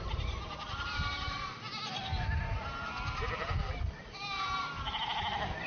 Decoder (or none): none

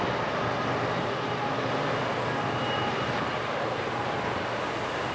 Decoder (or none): none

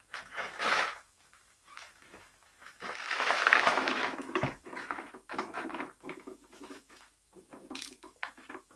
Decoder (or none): autoencoder, DAC-VAE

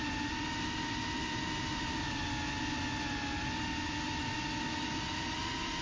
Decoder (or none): none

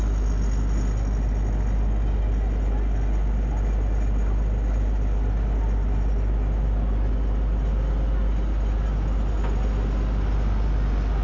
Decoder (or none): none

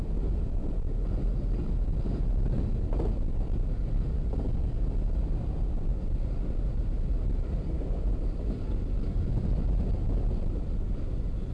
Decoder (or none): none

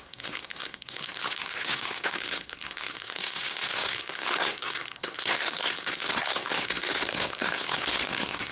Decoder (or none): codec, SNAC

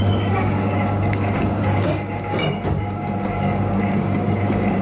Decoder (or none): codec, DAC